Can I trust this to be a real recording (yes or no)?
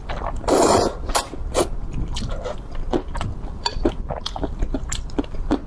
yes